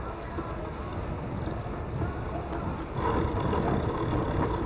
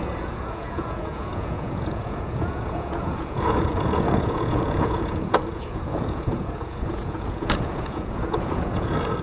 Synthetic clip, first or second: second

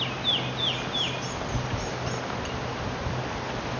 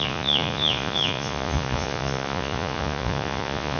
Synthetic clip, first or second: second